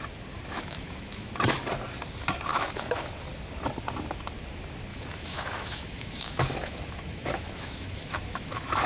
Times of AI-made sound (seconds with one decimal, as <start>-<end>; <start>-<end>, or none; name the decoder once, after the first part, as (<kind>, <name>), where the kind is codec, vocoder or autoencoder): 0.5-1.3 (autoencoder, DAC-VAE); 2.5-3.1; 4.9-8.9